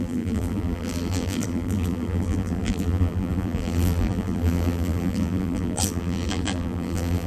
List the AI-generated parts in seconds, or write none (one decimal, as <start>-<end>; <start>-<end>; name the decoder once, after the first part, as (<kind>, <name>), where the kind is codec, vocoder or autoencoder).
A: 0.0-7.3 (vocoder, BigVGAN v2)